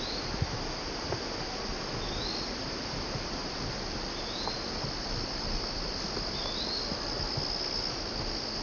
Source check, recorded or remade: recorded